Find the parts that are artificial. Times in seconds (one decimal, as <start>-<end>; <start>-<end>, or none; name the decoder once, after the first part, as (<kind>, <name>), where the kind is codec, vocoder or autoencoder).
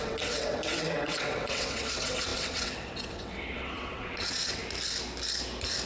0.0-4.6 (vocoder, WaveNeXt)